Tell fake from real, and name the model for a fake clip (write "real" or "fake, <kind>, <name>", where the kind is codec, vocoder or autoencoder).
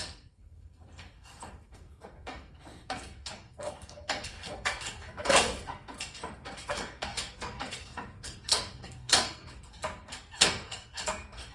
fake, codec, SNAC